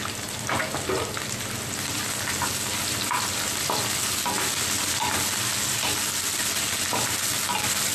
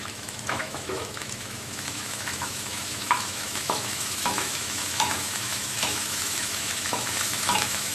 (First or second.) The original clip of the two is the first